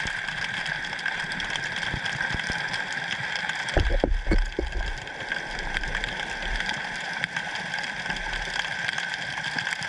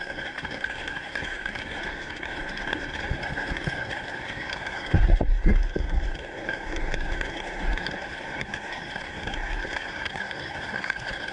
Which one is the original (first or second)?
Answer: first